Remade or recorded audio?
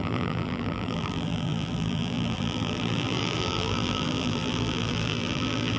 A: remade